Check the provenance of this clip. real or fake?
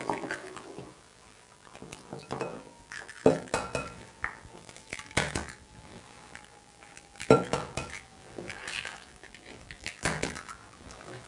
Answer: fake